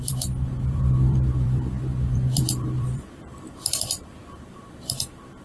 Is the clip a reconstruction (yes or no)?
yes